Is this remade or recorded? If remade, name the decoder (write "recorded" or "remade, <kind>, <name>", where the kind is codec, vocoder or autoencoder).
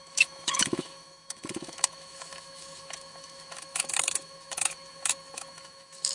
remade, autoencoder, DAC-VAE